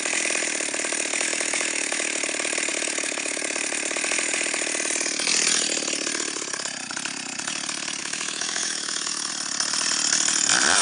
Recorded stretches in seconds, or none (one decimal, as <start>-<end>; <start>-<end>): 0.0-1.1; 2.2-2.7; 3.4-8.0; 9.3-10.8